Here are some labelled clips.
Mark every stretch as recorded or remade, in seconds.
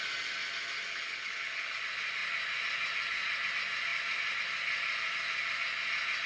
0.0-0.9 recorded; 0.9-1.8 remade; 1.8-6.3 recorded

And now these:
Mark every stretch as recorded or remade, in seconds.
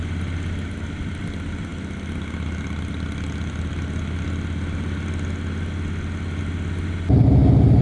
0.0-7.8 recorded